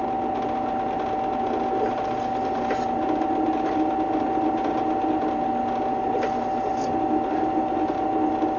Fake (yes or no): no